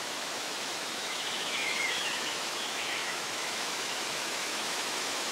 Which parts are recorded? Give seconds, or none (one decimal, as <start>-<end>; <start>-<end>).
none